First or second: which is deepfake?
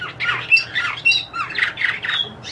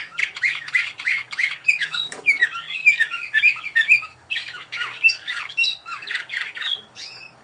second